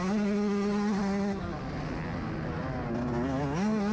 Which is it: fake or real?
real